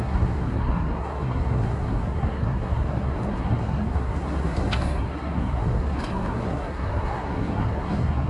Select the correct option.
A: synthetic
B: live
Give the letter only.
A